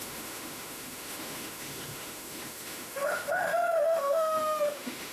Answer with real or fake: fake